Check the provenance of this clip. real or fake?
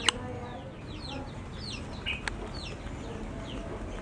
real